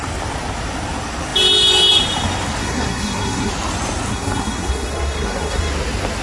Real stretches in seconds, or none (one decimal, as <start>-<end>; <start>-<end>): 0.0-2.6; 3.5-4.1; 5.7-6.2

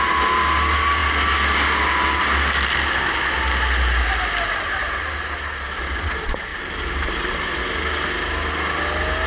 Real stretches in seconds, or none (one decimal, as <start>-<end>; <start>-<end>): 0.0-6.5; 7.6-9.3

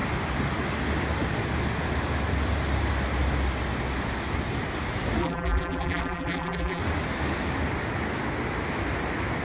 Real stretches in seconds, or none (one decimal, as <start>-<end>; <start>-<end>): 0.0-5.2; 6.8-9.4

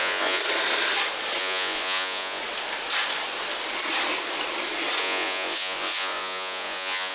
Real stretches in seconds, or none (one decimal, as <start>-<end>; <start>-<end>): 0.4-1.4; 2.4-5.0

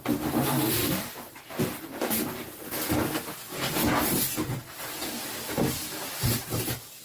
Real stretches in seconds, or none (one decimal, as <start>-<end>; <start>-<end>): 0.0-0.8; 1.6-7.0

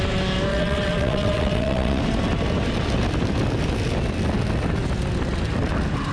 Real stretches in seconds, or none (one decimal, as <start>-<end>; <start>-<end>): 0.0-0.5; 2.0-6.1